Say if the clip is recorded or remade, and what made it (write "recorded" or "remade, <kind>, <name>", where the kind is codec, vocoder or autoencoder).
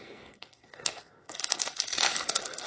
remade, codec, SNAC